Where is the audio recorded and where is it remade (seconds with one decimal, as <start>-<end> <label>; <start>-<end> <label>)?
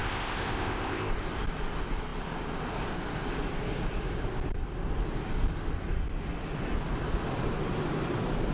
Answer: 0.0-1.1 remade; 1.1-8.5 recorded